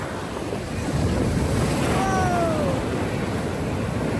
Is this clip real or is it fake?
real